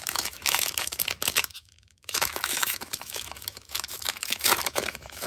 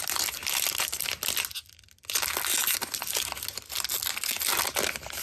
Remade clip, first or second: first